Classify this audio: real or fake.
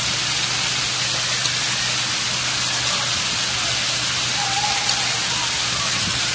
real